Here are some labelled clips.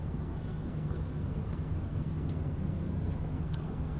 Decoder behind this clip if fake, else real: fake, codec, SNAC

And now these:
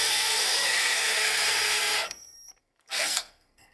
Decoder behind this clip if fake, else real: fake, codec, SNAC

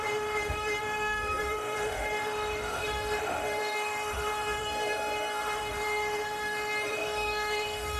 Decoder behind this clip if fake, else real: fake, autoencoder, DAC-VAE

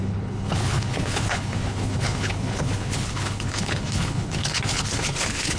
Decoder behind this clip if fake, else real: fake, codec, HILCodec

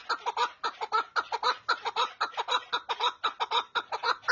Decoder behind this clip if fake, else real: real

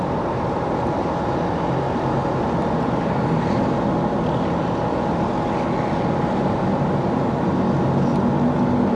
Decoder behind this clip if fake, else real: real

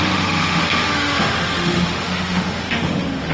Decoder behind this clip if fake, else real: fake, autoencoder, DAC-VAE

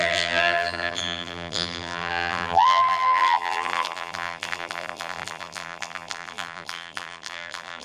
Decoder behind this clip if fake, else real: fake, vocoder, BigVGAN v2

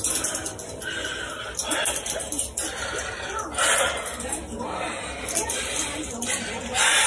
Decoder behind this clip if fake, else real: real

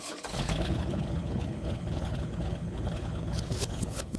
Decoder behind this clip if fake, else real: fake, codec, HILCodec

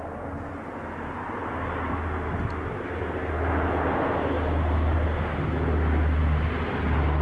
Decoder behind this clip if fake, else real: real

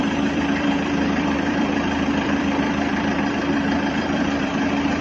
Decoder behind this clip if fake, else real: fake, vocoder, BigVGAN v2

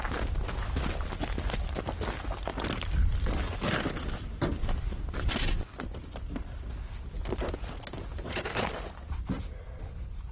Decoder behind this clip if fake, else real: real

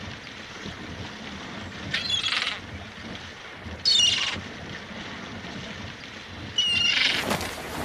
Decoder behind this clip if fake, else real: real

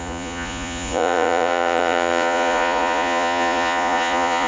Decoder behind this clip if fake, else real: fake, vocoder, Vocos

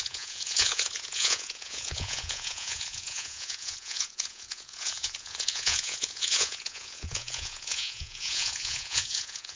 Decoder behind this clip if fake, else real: fake, vocoder, Vocos